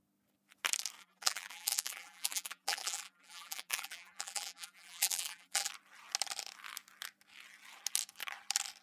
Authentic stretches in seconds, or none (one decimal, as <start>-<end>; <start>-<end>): 0.0-1.0; 5.7-8.8